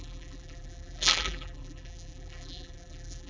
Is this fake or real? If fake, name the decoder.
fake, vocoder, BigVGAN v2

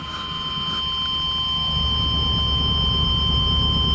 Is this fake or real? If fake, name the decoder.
real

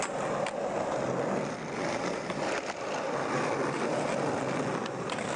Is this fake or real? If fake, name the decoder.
real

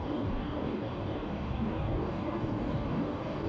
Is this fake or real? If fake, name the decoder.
fake, codec, DAC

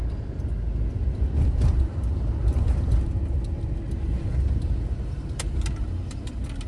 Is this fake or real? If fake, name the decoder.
real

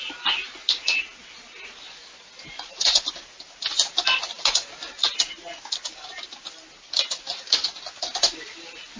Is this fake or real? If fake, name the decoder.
real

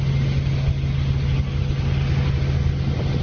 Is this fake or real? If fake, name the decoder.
real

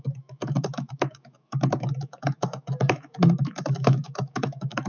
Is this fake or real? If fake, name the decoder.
fake, autoencoder, DAC-VAE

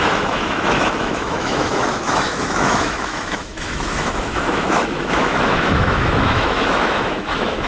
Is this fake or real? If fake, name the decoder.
fake, autoencoder, DAC-VAE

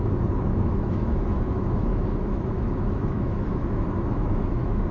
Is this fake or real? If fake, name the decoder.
fake, autoencoder, DAC-VAE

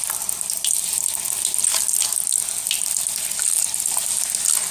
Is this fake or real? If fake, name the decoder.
real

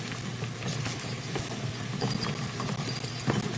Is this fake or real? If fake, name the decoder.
real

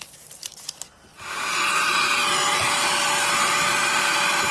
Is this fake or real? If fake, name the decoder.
real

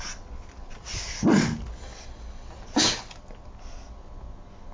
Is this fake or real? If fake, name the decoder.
real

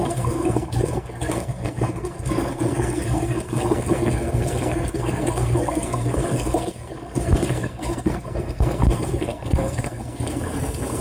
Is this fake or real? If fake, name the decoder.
fake, codec, SNAC